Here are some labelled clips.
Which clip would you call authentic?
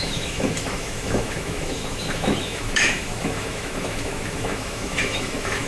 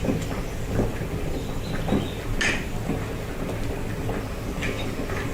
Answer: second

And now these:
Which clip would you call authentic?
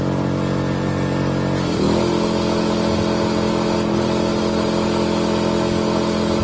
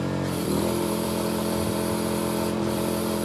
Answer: first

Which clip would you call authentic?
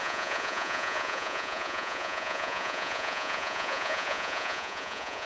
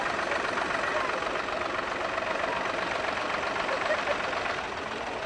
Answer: second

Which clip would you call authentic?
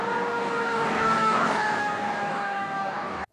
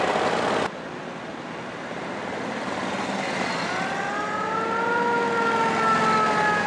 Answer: second